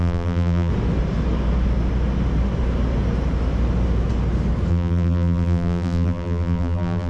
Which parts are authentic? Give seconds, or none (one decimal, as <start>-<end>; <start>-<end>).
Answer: 0.7-4.7